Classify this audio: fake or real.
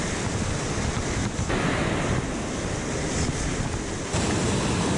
real